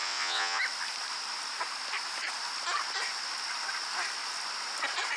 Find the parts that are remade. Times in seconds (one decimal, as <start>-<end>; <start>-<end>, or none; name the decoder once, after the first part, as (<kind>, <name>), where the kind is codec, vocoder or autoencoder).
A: 0.0-0.6 (vocoder, WaveNeXt)